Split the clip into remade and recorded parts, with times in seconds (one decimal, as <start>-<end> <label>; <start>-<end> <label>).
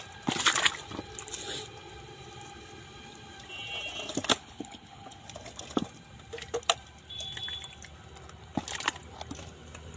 0.0-4.3 recorded; 4.3-5.2 remade; 5.2-10.0 recorded